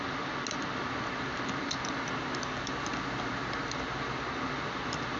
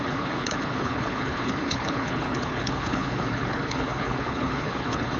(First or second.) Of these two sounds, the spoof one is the second